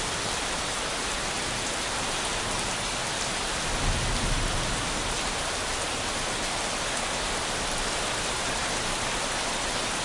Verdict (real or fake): real